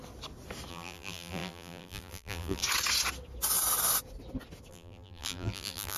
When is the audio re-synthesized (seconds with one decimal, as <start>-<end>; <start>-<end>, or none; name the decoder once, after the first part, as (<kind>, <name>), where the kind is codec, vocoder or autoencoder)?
0.7-2.6 (vocoder, BigVGAN v2); 4.7-6.0